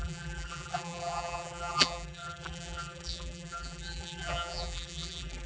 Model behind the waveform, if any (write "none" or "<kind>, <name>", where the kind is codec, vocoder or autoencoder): vocoder, BigVGAN v2